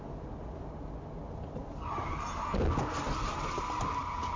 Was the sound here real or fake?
real